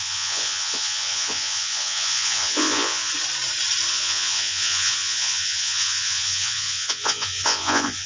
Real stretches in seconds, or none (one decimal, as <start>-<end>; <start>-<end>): 3.1-3.9